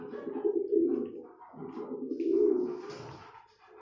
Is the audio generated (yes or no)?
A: no